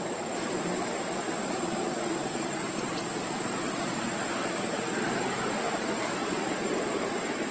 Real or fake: fake